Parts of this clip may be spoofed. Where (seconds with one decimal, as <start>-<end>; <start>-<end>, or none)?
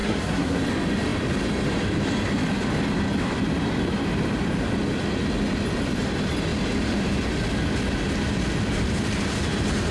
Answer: 0.0-0.6